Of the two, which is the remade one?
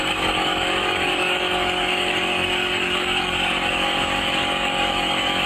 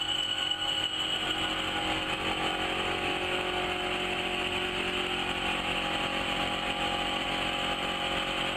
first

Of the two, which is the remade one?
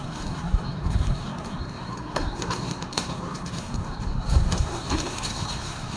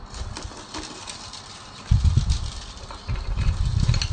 first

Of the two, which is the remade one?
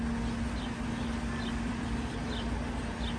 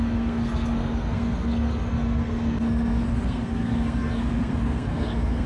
second